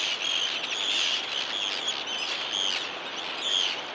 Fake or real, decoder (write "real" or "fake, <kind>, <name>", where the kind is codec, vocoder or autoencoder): real